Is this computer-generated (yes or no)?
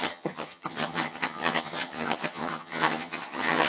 yes